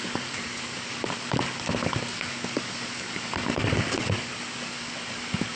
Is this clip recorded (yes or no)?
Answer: no